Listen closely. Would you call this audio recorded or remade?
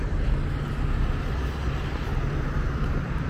recorded